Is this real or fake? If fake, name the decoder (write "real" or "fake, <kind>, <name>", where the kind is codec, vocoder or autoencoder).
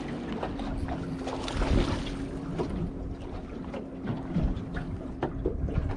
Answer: real